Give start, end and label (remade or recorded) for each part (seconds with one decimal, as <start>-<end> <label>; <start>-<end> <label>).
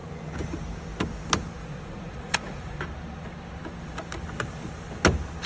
0.0-1.6 recorded; 1.6-2.8 remade; 2.8-5.5 recorded